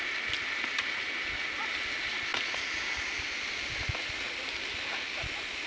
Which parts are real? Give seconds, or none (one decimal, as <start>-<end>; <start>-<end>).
0.0-5.7